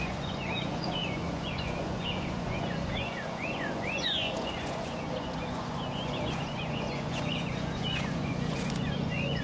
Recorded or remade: remade